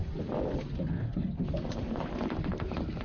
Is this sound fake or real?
real